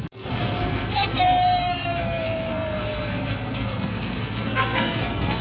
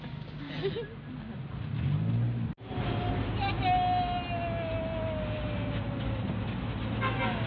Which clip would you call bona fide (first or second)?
second